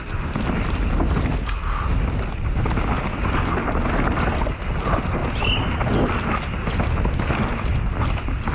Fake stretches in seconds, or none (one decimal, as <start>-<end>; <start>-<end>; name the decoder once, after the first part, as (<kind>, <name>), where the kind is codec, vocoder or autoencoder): none